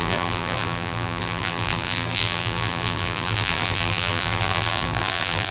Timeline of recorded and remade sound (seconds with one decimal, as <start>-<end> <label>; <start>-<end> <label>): 0.0-5.5 remade

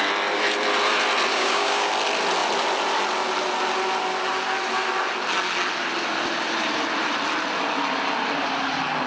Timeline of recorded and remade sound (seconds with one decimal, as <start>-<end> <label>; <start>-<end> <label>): 0.0-1.3 recorded; 1.3-1.9 remade; 1.9-9.1 recorded

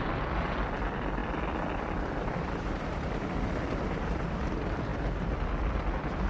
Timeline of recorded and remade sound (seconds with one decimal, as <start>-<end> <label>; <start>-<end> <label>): 0.0-4.9 remade; 4.9-6.3 recorded

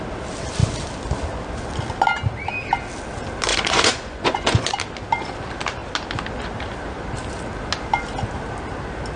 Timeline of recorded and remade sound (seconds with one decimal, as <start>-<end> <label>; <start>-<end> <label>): 0.0-3.5 recorded; 3.5-4.7 remade; 4.7-9.2 recorded

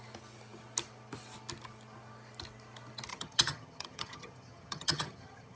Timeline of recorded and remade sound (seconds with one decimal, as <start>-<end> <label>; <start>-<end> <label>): 0.0-3.1 recorded; 3.1-5.6 remade